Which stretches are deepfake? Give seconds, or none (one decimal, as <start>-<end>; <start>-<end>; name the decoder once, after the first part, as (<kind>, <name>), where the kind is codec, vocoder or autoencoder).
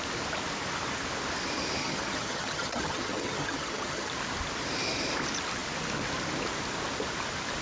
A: 1.8-4.1 (vocoder, HiFi-GAN)